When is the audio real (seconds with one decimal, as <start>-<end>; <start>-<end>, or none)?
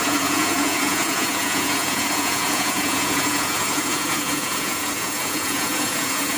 none